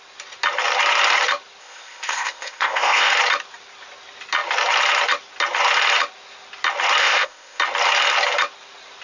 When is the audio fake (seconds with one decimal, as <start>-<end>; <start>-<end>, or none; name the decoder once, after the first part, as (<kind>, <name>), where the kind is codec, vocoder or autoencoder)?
1.6-3.1 (codec, ZipCodec); 7.0-7.6